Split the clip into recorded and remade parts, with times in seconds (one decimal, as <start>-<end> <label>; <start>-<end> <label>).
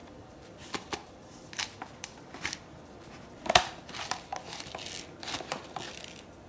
0.0-3.9 remade; 3.9-6.5 recorded